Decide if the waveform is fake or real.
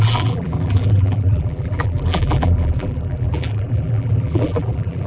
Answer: fake